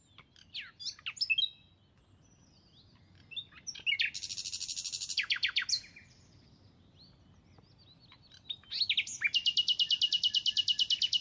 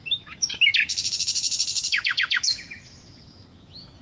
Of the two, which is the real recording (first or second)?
first